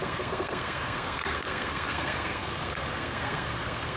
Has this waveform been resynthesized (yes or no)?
yes